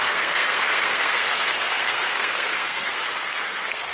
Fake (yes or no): yes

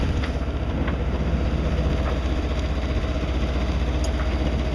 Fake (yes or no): no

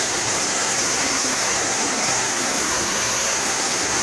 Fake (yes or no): yes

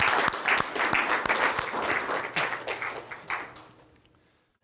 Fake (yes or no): no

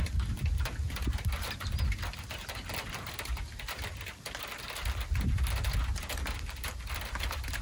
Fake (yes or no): no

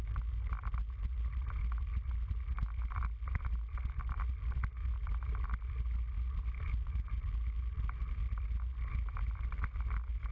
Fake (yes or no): no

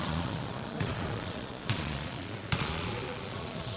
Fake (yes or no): yes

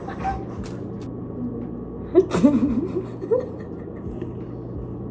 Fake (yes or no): no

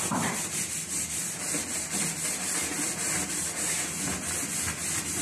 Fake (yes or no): yes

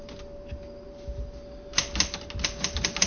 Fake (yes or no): no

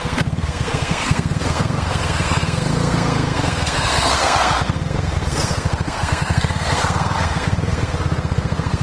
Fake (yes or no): yes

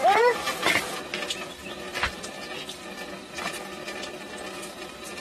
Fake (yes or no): no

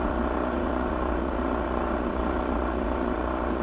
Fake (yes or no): yes